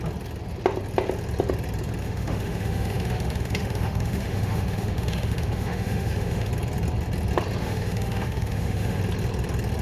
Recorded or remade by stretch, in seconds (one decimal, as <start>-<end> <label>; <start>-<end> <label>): 0.0-2.0 recorded; 2.0-6.5 remade; 6.5-7.6 recorded; 7.6-9.0 remade; 9.0-9.8 recorded